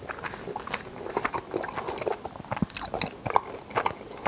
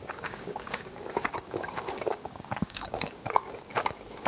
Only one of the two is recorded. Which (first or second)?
first